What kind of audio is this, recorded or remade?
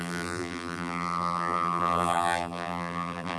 remade